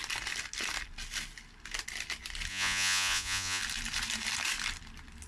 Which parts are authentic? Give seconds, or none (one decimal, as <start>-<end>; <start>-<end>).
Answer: 0.0-2.5; 3.6-5.3